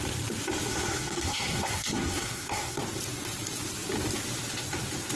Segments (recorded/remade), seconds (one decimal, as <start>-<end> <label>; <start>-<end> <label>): 0.0-0.7 recorded; 0.7-2.8 remade; 2.8-5.2 recorded